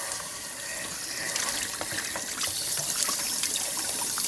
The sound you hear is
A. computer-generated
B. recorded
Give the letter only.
A